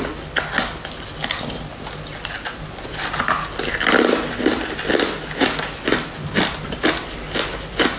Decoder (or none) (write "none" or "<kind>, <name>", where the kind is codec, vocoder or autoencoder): none